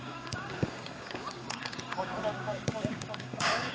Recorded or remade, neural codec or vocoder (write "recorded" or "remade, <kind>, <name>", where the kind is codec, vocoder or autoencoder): remade, codec, DAC